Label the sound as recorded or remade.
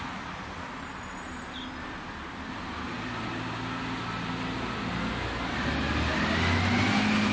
recorded